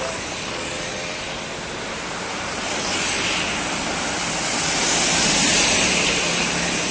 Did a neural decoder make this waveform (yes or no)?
no